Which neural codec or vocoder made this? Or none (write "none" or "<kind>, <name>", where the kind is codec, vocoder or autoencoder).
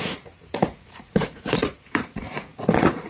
vocoder, Vocos